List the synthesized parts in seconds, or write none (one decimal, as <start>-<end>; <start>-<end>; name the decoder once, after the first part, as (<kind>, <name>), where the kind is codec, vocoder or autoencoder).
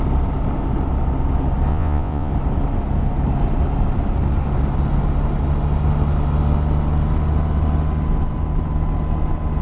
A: 1.7-2.3 (vocoder, Vocos)